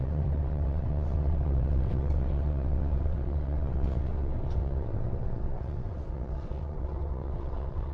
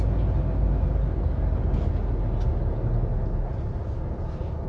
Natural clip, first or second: second